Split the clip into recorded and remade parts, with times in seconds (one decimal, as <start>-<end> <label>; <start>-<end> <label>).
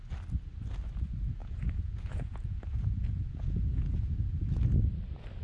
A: 0.0-1.4 recorded; 1.4-4.6 remade; 4.6-5.4 recorded